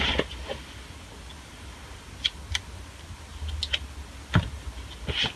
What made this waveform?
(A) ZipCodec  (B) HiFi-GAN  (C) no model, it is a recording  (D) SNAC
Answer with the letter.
C